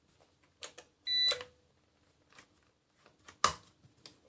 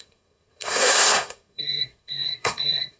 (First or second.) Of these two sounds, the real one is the first